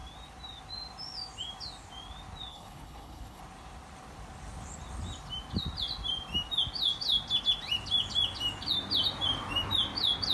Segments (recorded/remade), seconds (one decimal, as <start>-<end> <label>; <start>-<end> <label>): 0.0-2.5 recorded; 2.5-3.4 remade; 3.4-10.3 recorded